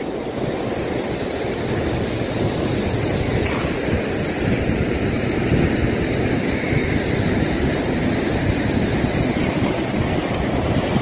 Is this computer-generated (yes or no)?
no